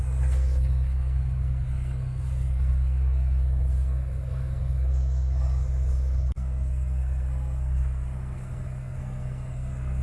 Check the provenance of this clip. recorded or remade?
remade